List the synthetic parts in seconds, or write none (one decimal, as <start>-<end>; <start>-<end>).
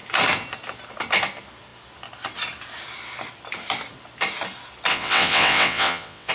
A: 4.9-6.3